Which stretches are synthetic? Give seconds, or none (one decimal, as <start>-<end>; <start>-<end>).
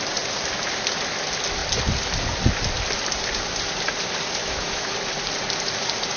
4.4-4.9